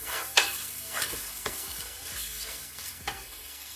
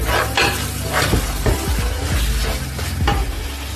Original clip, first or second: second